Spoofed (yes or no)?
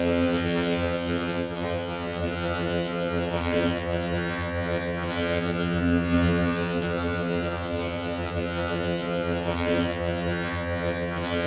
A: yes